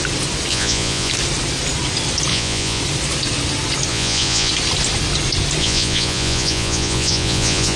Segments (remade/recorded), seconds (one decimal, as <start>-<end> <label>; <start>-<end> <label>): 0.0-0.5 recorded; 0.5-1.1 remade; 1.1-2.3 recorded; 2.3-2.8 remade; 2.8-3.9 recorded; 3.9-4.5 remade; 4.5-5.6 recorded; 5.6-7.8 remade